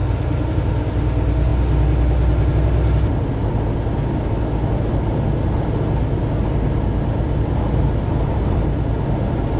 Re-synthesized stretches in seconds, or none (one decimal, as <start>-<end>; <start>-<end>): none